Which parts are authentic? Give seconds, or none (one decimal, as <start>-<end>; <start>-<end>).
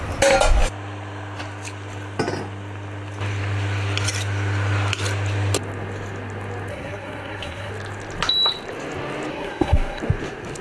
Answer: 0.0-6.7; 7.7-9.3; 10.0-10.6